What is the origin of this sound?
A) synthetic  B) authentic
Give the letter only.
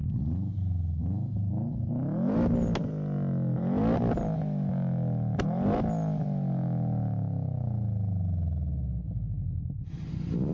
B